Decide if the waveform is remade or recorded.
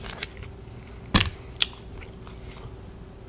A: recorded